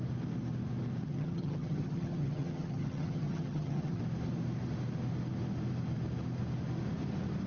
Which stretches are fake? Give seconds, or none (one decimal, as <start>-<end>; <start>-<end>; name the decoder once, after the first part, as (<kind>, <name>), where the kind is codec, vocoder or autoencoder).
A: 1.0-4.0 (vocoder, HiFi-GAN)